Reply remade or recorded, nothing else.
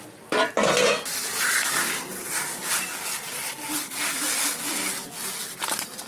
recorded